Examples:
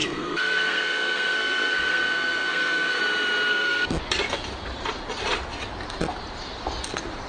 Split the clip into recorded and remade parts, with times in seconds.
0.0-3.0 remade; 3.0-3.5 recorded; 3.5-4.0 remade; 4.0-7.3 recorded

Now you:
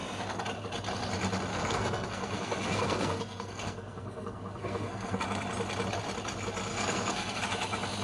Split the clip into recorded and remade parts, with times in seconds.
0.0-1.5 recorded; 1.5-5.2 remade; 5.2-6.7 recorded; 6.7-7.4 remade; 7.4-8.0 recorded